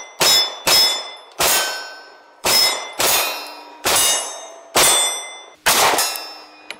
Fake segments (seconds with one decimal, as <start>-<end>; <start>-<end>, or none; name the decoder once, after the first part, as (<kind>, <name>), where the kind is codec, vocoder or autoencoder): 0.9-4.5 (vocoder, BigVGAN v2)